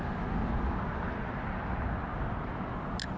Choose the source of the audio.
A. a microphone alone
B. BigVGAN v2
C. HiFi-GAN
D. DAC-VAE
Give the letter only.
A